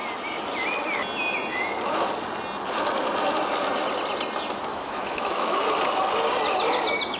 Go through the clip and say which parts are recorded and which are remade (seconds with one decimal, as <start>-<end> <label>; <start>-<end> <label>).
0.0-4.7 recorded; 4.7-5.6 remade; 5.6-7.2 recorded